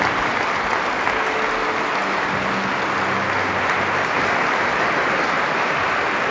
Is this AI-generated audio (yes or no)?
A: no